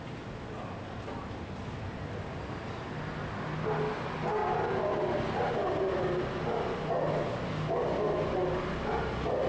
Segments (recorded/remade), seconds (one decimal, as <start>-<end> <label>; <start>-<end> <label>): 0.0-9.5 recorded